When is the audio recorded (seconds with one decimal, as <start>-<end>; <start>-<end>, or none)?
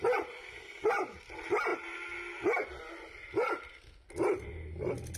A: 0.0-5.2